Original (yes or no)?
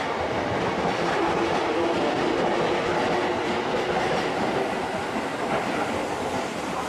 yes